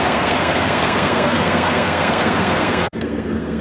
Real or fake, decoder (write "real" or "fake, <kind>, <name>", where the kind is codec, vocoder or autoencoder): fake, codec, SNAC